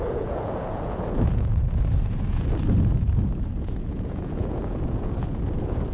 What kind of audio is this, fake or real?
fake